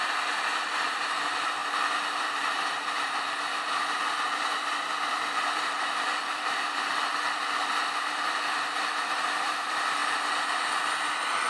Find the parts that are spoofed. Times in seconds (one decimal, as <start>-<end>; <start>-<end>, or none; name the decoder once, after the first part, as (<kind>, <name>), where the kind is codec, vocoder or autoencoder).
0.0-1.6 (vocoder, BigVGAN v2); 2.2-10.0; 10.7-11.5